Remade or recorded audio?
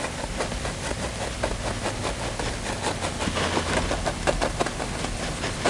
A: recorded